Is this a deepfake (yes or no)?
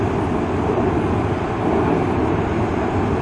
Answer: no